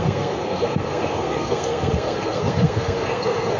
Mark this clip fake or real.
fake